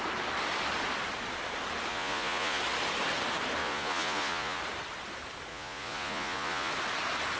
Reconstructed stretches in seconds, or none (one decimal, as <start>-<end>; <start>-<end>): 1.9-2.6; 3.6-4.6; 5.5-6.7